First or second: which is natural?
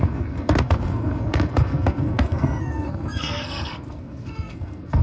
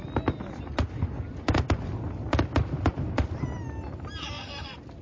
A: second